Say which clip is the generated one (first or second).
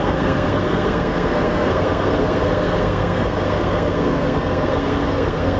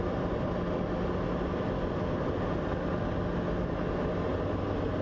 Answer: first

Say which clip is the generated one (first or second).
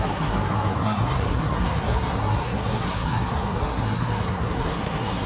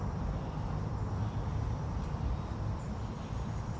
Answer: first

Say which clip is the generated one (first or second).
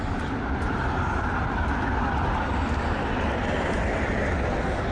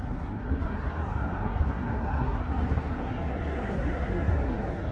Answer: second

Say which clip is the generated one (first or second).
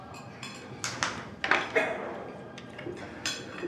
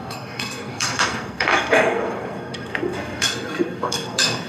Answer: second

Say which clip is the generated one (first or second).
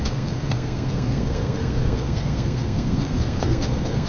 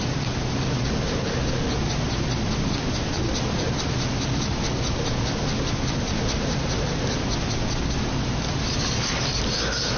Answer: first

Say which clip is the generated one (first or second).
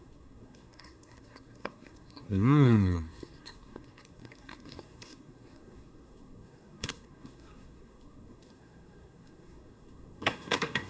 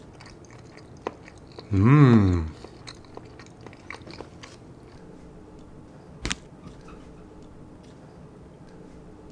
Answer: first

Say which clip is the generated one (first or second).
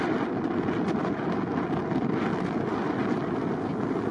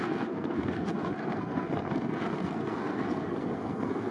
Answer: second